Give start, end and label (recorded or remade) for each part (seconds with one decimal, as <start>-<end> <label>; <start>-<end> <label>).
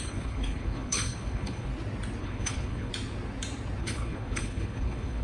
0.0-1.7 remade; 1.7-2.2 recorded; 2.2-2.9 remade; 2.9-3.8 recorded; 3.8-5.2 remade